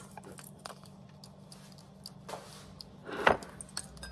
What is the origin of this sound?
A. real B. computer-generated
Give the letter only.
A